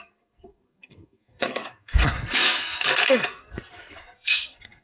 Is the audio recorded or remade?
remade